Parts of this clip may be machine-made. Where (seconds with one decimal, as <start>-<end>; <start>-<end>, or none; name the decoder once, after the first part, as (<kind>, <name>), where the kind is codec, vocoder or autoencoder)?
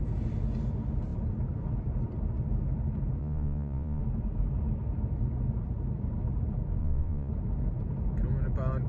3.2-4.0 (vocoder, Vocos); 6.8-7.3